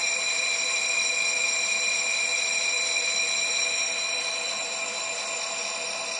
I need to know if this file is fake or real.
real